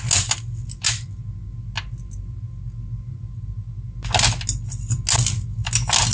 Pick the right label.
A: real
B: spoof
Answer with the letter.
A